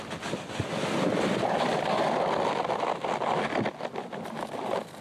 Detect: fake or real real